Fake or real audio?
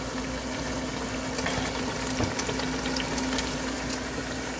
real